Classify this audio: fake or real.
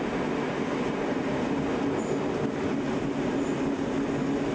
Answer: real